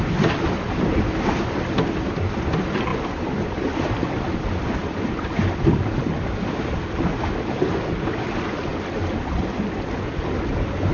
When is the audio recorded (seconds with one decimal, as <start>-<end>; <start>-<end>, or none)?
0.0-10.9